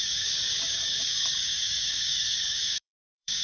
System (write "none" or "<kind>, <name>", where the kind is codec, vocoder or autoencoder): codec, DAC